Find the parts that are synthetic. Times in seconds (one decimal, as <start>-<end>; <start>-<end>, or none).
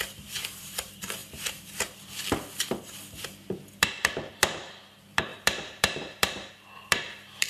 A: 0.0-7.5